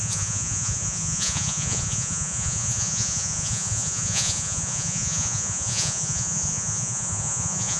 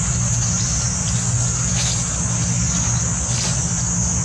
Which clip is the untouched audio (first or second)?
second